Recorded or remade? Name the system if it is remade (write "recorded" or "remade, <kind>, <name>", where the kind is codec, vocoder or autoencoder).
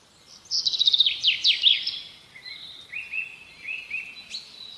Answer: recorded